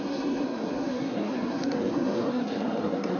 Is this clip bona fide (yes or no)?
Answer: no